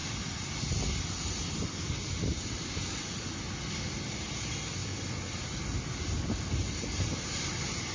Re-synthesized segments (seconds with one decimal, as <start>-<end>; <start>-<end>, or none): none